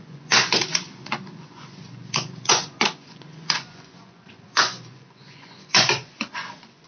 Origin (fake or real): fake